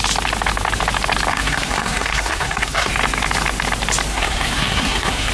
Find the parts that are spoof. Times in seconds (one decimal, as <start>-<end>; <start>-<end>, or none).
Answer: 1.3-2.9; 4.1-5.3